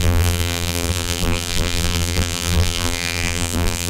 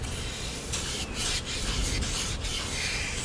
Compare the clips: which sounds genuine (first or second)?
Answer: second